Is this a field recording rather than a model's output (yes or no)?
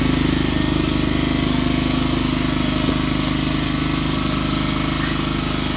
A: yes